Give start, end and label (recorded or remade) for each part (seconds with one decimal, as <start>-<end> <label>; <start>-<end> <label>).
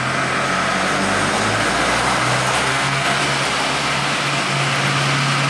0.0-2.7 recorded; 2.7-3.2 remade; 3.2-5.5 recorded